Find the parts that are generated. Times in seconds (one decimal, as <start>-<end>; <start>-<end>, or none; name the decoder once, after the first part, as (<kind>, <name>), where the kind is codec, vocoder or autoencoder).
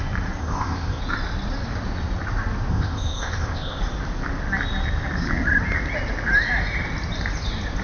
0.4-1.0 (codec, ZipCodec); 2.7-3.8